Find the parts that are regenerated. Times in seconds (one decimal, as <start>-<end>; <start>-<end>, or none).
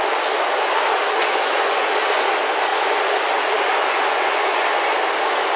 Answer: 1.2-2.2; 2.7-5.0